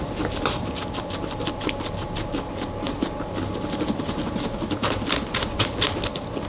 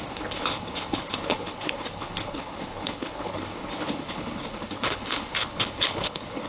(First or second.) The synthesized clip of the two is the second